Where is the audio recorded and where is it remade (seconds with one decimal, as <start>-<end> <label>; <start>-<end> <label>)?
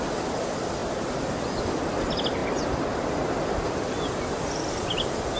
0.0-5.4 recorded